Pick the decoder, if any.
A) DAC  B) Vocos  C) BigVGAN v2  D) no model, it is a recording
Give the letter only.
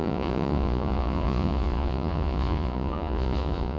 B